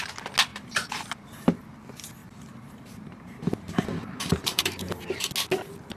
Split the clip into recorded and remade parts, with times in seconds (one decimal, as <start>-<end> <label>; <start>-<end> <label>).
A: 0.0-0.5 recorded; 0.5-1.6 remade; 1.6-2.2 recorded; 2.2-5.0 remade; 5.0-6.0 recorded